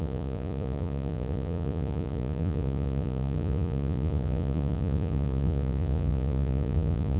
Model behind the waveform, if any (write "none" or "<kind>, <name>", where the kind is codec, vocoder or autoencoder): vocoder, Vocos